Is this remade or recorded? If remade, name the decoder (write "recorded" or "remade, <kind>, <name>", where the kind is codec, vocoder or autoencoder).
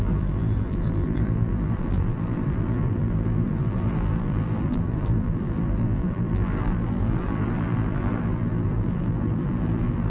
remade, vocoder, BigVGAN v2